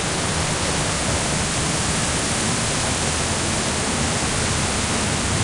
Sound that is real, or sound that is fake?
real